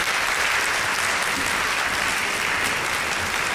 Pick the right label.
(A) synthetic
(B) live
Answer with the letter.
B